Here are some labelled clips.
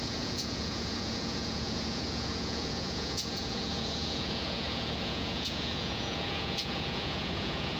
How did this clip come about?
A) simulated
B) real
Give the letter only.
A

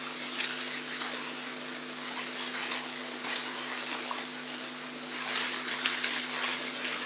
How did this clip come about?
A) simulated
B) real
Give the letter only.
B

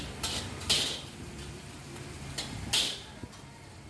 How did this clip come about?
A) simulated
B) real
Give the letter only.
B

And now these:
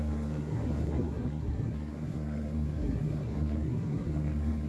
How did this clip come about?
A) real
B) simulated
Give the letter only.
B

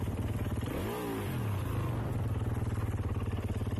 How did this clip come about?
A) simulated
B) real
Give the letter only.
B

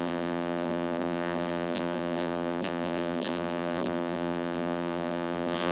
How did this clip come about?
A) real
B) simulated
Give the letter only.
B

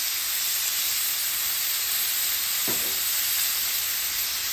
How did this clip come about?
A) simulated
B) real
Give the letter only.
B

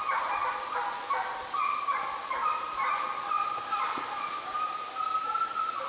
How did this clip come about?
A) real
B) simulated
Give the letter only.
A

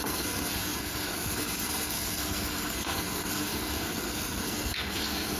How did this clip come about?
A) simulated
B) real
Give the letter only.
A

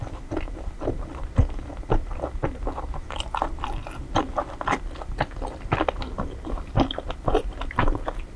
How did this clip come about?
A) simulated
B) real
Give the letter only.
B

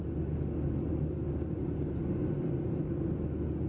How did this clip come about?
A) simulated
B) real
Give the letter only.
B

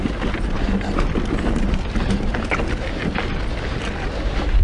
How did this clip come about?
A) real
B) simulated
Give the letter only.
A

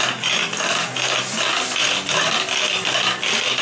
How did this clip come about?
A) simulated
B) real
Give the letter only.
B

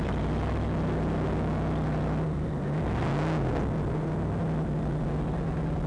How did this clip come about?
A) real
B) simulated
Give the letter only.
A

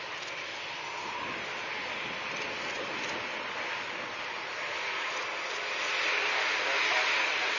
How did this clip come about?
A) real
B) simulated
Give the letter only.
A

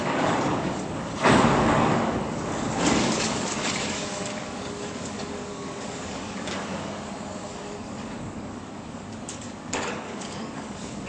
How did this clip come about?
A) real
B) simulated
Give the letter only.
B